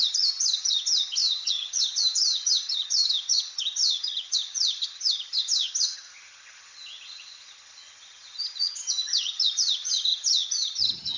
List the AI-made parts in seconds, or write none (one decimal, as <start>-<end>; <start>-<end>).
0.0-11.2